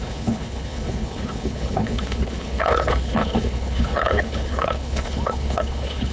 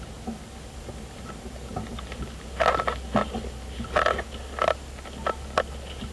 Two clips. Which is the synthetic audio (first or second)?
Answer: first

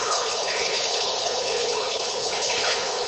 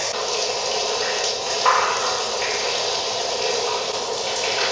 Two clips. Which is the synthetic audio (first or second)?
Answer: first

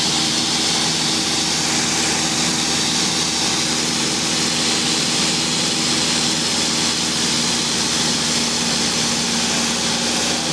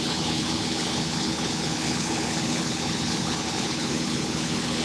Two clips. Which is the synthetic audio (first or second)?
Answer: second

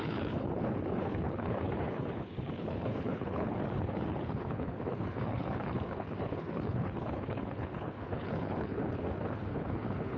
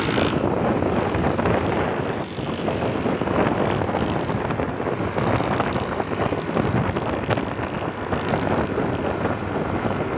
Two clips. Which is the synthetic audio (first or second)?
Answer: first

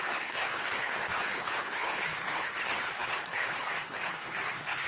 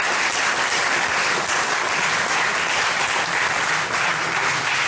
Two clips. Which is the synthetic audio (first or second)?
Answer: first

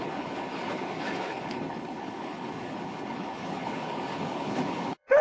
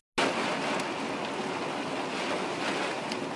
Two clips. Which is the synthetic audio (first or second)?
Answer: first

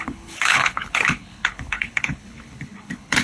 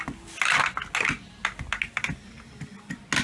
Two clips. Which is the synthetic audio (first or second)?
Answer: first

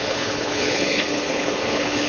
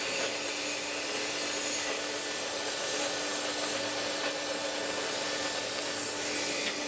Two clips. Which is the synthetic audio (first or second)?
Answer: first